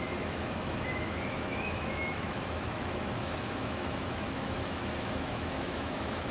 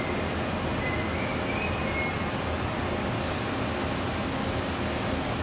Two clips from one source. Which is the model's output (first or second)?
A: first